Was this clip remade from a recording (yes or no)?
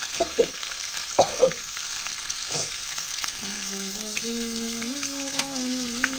yes